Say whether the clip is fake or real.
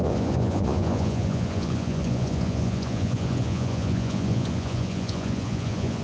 fake